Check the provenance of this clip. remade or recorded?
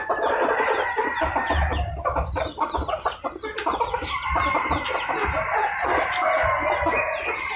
recorded